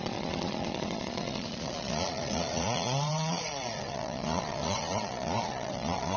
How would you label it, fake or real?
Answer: fake